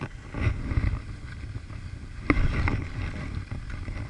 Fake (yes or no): no